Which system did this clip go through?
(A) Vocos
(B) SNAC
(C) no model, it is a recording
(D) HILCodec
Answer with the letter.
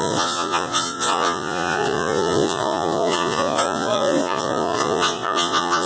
A